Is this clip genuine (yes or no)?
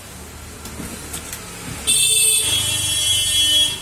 yes